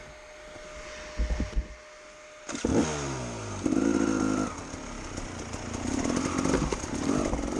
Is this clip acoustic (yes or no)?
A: yes